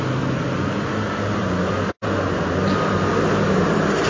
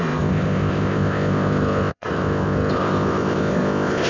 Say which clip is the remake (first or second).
second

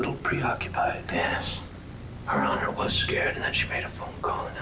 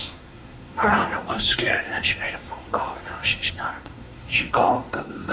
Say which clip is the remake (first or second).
second